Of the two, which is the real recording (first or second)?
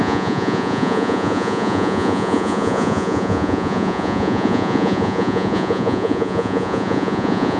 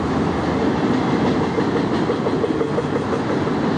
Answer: second